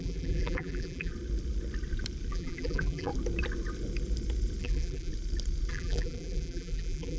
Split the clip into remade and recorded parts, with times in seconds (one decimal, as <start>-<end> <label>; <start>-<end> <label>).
0.0-1.1 remade; 1.1-2.3 recorded; 2.3-3.1 remade; 3.1-4.6 recorded; 4.6-5.1 remade; 5.1-5.7 recorded; 5.7-7.2 remade